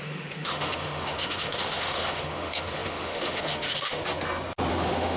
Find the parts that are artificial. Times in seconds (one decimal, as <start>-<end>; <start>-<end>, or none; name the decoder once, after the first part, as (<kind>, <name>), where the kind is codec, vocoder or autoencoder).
0.0-4.0 (autoencoder, DAC-VAE); 4.7-5.2